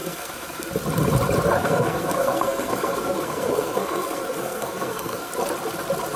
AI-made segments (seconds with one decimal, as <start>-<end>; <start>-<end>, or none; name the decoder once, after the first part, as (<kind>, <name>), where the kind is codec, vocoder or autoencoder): 0.0-0.7 (codec, SNAC); 1.6-5.3